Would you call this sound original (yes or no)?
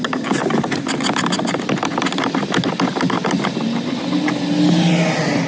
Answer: yes